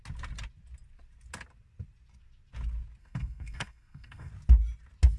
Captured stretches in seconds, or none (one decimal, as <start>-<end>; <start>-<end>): 0.0-3.0; 4.3-5.2